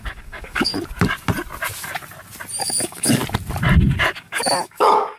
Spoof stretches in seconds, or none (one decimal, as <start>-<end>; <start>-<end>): 0.0-0.7; 2.6-3.2; 4.2-5.2